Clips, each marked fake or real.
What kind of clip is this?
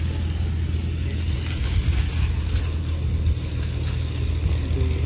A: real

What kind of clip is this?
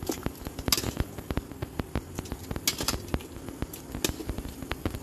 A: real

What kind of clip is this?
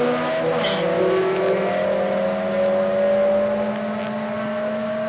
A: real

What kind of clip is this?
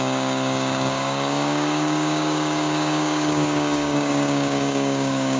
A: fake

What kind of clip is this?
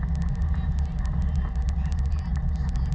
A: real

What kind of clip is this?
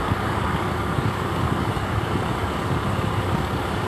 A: fake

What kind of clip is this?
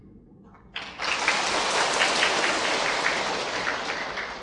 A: real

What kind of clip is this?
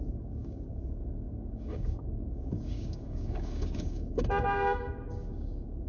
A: fake